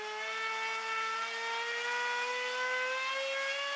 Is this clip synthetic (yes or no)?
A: no